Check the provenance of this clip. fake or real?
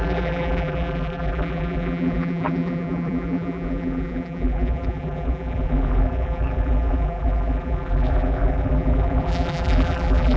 fake